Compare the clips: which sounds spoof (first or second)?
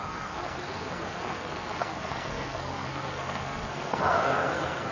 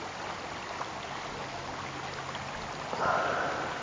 first